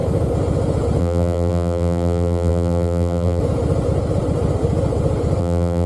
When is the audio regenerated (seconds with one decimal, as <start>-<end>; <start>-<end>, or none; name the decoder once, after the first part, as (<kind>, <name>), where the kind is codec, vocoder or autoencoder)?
1.0-3.4 (vocoder, BigVGAN v2); 5.4-5.9